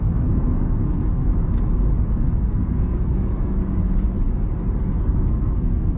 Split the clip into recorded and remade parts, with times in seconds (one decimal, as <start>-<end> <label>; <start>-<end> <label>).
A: 0.0-1.3 remade; 1.3-2.2 recorded; 2.2-3.6 remade; 3.6-4.8 recorded; 4.8-6.0 remade

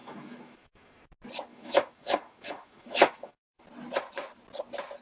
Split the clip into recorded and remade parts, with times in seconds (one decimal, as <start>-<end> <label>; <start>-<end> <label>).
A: 0.0-1.1 remade; 1.1-1.5 recorded; 1.5-3.6 remade; 3.6-5.0 recorded